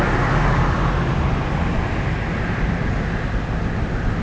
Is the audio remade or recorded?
recorded